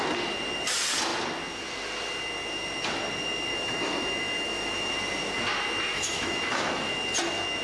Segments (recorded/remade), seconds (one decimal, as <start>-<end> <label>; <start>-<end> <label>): 0.0-3.5 recorded; 3.5-4.9 remade; 4.9-5.9 recorded; 5.9-6.9 remade; 6.9-7.6 recorded